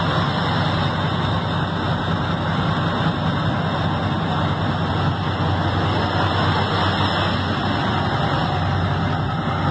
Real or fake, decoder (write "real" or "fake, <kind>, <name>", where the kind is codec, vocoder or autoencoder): real